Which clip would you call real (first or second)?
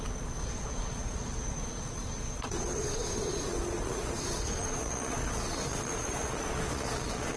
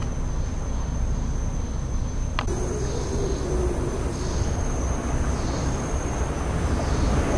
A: second